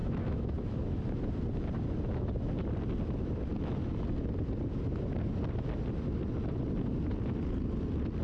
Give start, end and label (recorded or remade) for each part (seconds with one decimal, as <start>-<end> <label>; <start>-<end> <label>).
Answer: 0.0-1.0 remade; 1.0-8.2 recorded